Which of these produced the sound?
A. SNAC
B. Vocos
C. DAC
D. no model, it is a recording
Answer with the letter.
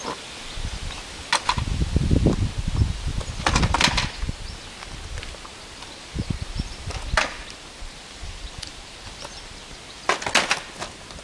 D